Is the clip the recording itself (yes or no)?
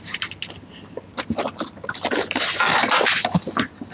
yes